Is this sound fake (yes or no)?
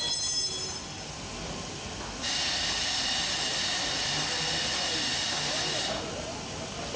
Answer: no